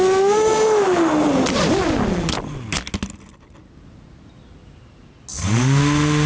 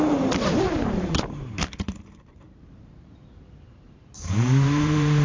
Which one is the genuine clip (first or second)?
first